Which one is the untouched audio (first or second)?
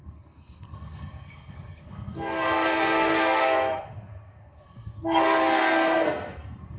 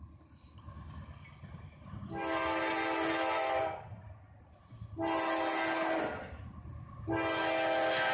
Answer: second